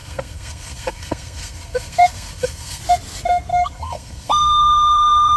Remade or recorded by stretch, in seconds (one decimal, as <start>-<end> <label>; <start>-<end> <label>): 0.0-2.8 remade; 2.8-3.5 recorded; 3.5-5.4 remade